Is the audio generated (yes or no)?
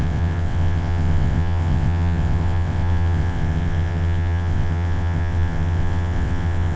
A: yes